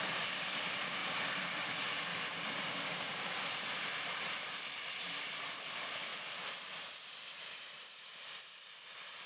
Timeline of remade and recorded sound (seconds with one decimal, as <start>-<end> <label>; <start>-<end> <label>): 0.0-6.1 remade; 6.1-7.9 recorded; 7.9-9.3 remade

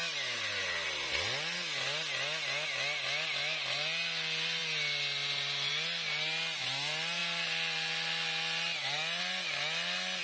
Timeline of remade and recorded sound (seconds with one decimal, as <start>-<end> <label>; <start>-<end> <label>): 0.0-10.2 recorded

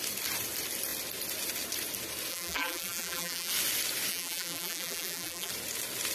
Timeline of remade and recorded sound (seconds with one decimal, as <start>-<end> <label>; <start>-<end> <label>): 0.0-2.3 recorded; 2.3-3.5 remade; 3.5-4.1 recorded; 4.1-5.5 remade; 5.5-6.1 recorded

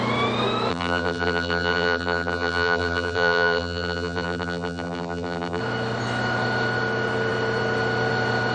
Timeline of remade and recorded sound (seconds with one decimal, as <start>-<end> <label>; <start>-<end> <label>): 0.0-0.7 recorded; 0.7-5.6 remade; 5.6-8.5 recorded

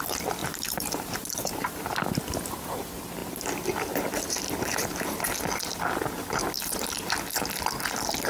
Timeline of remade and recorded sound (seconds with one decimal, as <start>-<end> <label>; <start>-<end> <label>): 0.0-0.4 recorded; 0.4-1.8 remade; 1.8-8.3 recorded